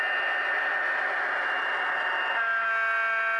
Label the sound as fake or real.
real